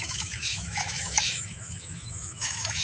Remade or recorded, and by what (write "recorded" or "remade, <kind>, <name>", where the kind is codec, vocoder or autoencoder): remade, autoencoder, DAC-VAE